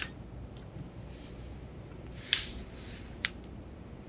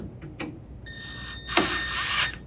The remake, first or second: first